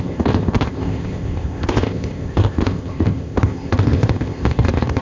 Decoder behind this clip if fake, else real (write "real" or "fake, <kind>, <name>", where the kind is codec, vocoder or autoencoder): fake, codec, ZipCodec